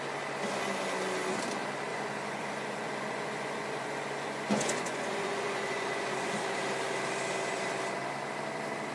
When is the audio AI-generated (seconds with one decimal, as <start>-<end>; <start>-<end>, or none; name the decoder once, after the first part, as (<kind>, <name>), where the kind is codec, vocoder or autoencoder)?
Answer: 1.9-6.4 (vocoder, Vocos)